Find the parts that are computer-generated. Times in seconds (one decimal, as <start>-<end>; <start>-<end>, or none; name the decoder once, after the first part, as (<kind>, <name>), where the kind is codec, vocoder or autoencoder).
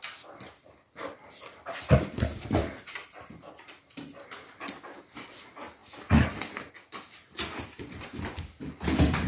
none